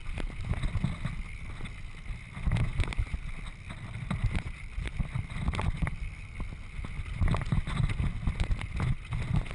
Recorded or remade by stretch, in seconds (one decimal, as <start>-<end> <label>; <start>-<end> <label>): 0.0-0.7 remade; 0.7-2.7 recorded; 2.7-6.2 remade; 6.2-9.5 recorded